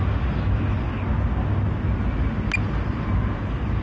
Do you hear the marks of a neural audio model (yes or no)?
no